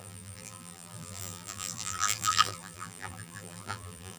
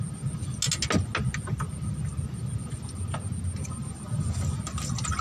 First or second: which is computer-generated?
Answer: first